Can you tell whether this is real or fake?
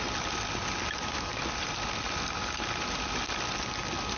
real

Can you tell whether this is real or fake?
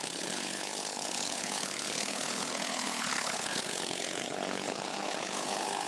fake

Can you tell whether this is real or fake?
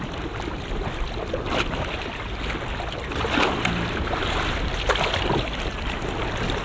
real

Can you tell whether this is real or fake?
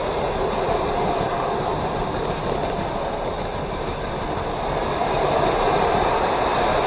real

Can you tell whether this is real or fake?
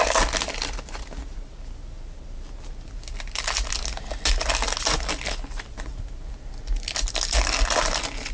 real